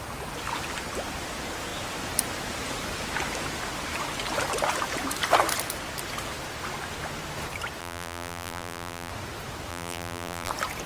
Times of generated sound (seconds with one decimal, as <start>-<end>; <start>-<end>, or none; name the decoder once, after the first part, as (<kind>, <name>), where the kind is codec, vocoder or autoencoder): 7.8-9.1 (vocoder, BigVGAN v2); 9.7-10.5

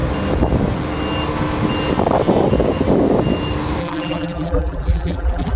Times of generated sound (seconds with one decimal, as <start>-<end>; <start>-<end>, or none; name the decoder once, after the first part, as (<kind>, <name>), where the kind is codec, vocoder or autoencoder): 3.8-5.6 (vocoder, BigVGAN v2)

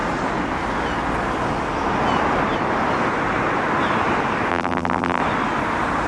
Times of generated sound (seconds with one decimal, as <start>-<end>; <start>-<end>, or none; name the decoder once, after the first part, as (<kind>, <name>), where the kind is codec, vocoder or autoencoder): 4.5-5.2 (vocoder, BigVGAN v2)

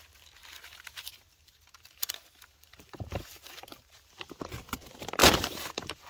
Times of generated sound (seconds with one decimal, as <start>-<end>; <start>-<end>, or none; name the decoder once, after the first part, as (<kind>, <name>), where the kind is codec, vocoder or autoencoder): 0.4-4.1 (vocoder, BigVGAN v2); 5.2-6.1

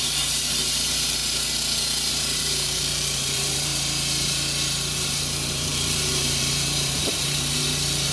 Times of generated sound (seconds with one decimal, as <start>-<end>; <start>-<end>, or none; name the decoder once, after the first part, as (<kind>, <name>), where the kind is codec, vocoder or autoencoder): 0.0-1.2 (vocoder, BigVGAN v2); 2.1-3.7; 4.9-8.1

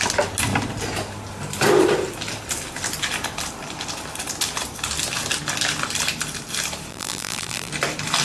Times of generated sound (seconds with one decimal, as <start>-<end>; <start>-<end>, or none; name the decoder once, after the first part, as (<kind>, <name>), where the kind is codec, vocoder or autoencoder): 6.9-7.7 (vocoder, BigVGAN v2)